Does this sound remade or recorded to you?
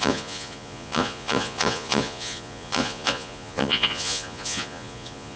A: remade